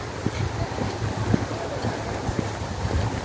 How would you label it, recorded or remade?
recorded